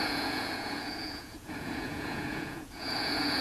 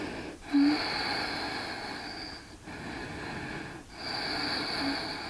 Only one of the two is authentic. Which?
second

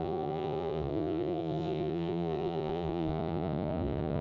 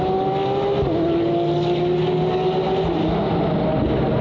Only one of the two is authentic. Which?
second